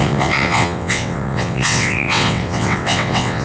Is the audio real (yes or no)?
no